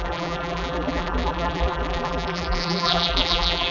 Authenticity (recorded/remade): remade